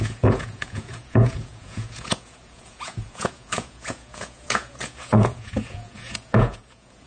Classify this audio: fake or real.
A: fake